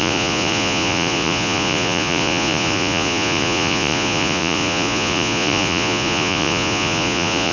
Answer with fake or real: fake